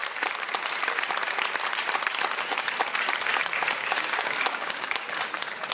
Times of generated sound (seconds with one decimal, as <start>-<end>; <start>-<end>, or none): 3.8-5.3